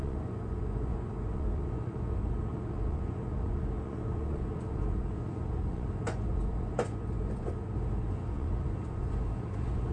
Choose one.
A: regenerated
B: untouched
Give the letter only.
A